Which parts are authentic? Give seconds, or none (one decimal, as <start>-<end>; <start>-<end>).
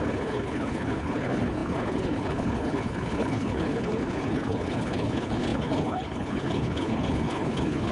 none